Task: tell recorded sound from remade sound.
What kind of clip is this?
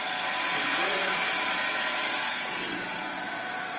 remade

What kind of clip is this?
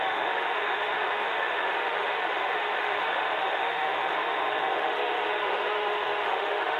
remade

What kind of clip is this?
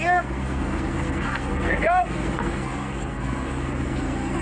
remade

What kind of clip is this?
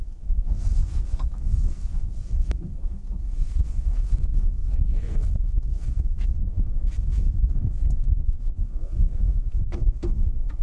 remade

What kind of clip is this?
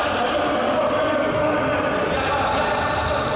recorded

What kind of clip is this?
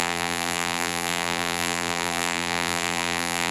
remade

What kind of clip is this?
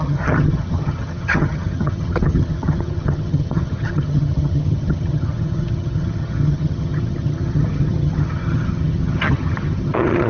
remade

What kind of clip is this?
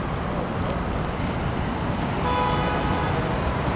recorded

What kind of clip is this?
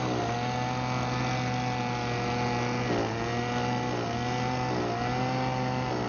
recorded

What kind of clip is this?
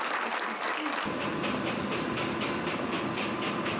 recorded